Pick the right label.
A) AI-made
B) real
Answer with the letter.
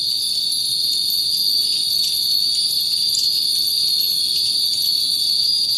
B